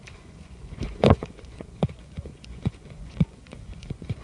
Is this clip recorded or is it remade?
remade